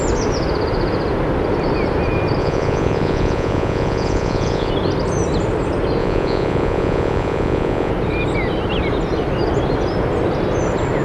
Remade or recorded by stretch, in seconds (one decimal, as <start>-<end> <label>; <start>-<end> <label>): 0.0-2.4 recorded; 2.4-4.7 remade; 4.7-6.0 recorded; 6.0-7.9 remade; 7.9-11.0 recorded

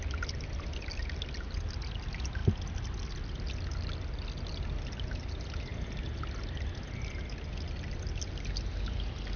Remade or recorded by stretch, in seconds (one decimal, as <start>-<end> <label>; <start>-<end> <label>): 0.0-9.4 recorded

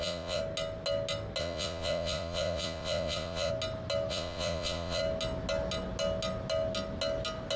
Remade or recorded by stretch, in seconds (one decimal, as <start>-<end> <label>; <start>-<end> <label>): 0.0-0.4 remade; 0.4-1.4 recorded; 1.4-3.5 remade; 3.5-4.1 recorded; 4.1-5.0 remade; 5.0-7.6 recorded